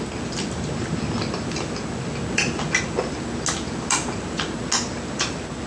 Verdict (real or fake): real